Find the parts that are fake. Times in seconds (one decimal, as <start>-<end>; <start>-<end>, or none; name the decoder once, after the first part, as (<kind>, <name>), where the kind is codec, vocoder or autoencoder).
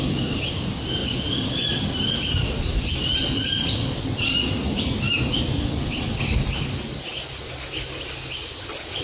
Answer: 7.1-8.1 (vocoder, BigVGAN v2)